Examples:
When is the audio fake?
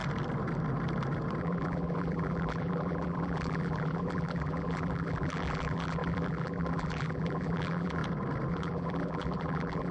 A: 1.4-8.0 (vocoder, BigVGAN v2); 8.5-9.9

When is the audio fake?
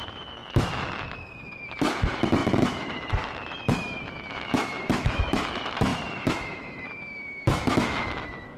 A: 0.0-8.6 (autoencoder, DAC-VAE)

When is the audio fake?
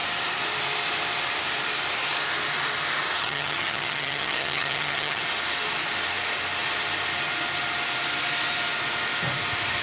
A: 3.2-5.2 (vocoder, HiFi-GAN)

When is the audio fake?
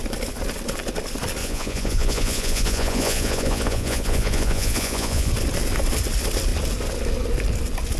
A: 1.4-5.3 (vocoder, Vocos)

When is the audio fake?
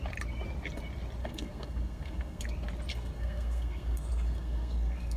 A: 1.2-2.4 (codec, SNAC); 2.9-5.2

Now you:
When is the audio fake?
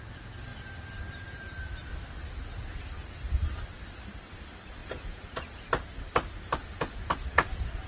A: 4.8-5.6 (vocoder, Vocos); 6.6-7.9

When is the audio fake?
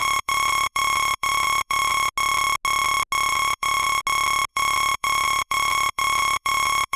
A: 0.0-2.1 (vocoder, BigVGAN v2); 3.3-4.0; 4.5-7.0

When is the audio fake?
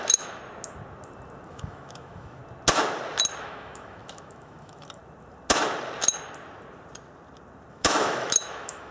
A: 0.0-0.4 (autoencoder, DAC-VAE); 1.5-2.4; 3.4-5.0; 7.7-8.9